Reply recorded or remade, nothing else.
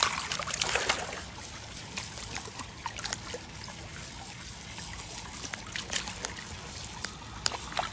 recorded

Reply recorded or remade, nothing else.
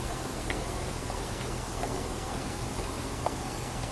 remade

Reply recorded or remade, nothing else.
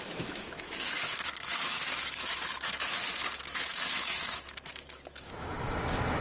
remade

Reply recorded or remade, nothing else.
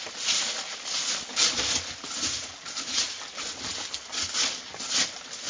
recorded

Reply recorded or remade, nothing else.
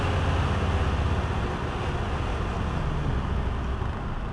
recorded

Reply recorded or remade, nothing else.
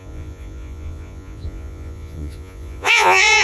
remade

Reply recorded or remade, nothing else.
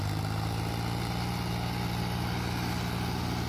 recorded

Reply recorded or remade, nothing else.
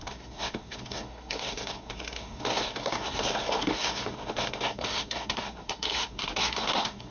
remade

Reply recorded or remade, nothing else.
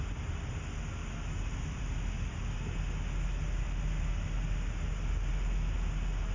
recorded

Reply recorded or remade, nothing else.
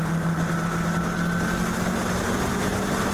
recorded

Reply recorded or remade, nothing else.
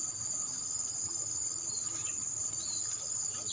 recorded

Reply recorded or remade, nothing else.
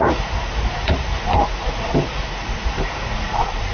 remade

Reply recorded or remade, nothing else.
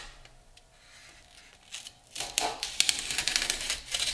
recorded